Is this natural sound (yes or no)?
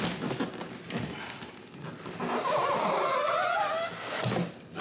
yes